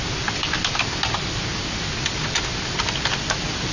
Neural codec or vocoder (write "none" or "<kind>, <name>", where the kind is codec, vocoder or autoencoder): none